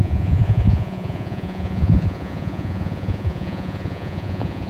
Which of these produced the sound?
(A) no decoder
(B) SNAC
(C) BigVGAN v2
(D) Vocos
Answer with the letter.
D